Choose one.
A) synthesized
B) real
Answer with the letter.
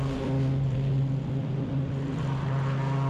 B